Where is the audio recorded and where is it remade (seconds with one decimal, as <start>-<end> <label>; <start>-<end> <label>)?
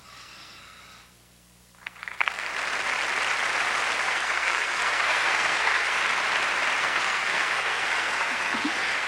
0.0-2.5 remade; 2.5-4.0 recorded; 4.0-6.0 remade; 6.0-6.8 recorded; 6.8-9.1 remade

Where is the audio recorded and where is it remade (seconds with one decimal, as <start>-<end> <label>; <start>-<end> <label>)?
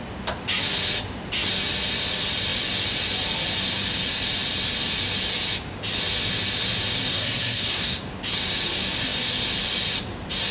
0.0-7.1 recorded; 7.1-8.0 remade; 8.0-10.5 recorded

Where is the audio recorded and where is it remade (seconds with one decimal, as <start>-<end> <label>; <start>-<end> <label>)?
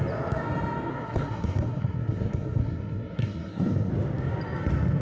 0.0-0.9 recorded; 0.9-3.9 remade; 3.9-5.0 recorded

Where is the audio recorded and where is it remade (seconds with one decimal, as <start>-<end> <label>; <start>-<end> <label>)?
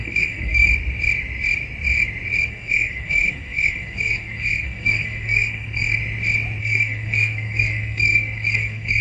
0.0-0.7 remade; 0.7-2.5 recorded; 2.5-6.0 remade; 6.0-6.6 recorded; 6.6-9.0 remade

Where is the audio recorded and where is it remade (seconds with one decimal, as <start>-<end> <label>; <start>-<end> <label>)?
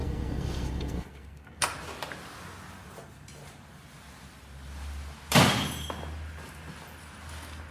0.0-1.6 remade; 1.6-7.7 recorded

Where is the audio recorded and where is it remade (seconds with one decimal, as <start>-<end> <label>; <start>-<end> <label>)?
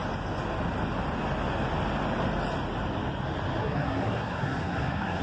0.0-3.6 recorded; 3.6-5.2 remade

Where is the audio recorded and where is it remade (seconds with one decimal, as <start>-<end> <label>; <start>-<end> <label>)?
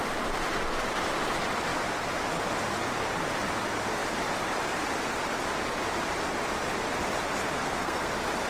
0.0-7.6 recorded; 7.6-8.1 remade; 8.1-8.5 recorded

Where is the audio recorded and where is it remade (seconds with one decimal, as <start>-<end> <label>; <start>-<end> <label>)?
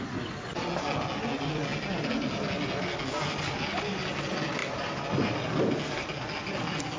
0.0-7.0 recorded